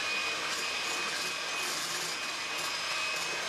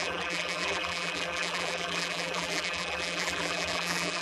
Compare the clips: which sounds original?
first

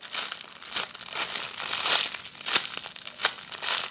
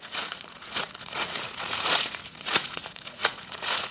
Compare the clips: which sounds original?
first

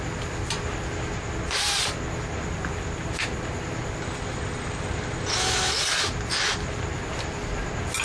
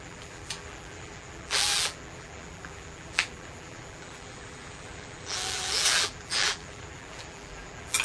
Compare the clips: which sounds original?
first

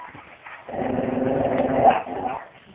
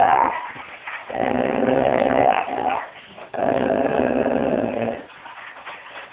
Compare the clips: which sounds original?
first